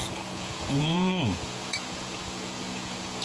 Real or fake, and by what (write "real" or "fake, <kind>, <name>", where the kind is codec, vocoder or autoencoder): fake, vocoder, Vocos